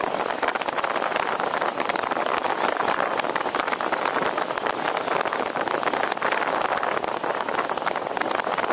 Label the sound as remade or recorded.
recorded